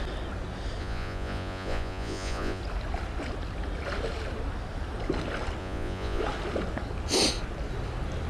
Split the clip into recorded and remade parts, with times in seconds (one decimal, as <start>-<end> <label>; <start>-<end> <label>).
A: 0.0-0.8 recorded; 0.8-2.6 remade; 2.6-5.6 recorded; 5.6-6.2 remade; 6.2-8.3 recorded